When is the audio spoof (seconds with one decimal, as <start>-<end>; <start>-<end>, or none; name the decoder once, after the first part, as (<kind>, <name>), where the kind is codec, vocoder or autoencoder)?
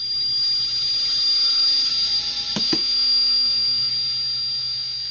0.0-1.9 (autoencoder, DAC-VAE); 2.6-3.9; 4.6-5.1